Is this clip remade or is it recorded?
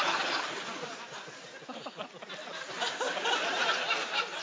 recorded